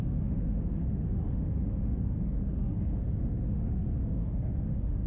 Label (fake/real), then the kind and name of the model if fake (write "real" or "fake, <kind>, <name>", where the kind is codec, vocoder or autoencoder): fake, autoencoder, DAC-VAE